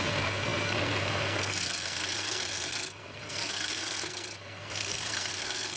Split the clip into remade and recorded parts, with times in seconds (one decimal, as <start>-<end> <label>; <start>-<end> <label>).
0.0-5.8 remade